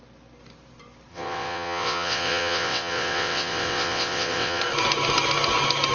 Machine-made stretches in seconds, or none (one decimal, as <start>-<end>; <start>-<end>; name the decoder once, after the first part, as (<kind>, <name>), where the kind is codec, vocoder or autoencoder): 1.1-4.6 (vocoder, WaveNeXt)